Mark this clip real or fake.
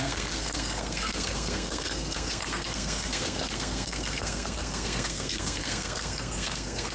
fake